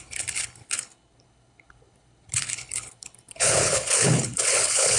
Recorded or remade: remade